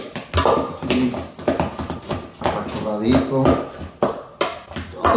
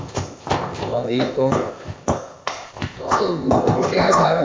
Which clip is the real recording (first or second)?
first